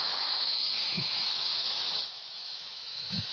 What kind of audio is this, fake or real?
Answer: fake